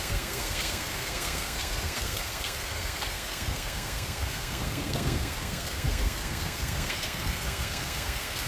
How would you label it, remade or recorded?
remade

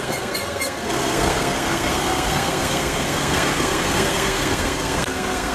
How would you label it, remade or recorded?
remade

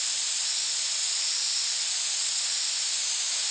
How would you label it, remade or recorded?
recorded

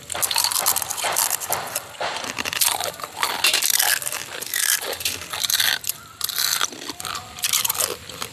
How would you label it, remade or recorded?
remade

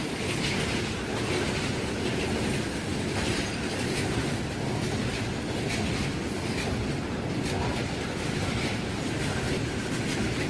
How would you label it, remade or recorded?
recorded